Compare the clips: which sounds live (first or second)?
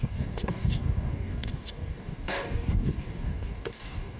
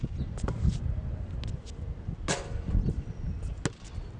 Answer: second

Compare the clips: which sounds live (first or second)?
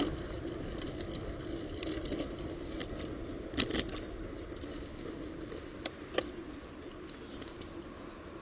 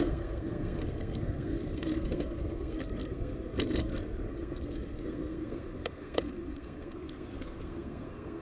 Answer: first